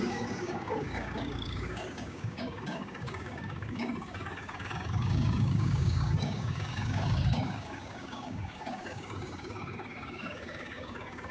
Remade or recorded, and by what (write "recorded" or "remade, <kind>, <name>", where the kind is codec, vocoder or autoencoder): remade, codec, DAC